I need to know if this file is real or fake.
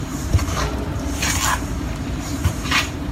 fake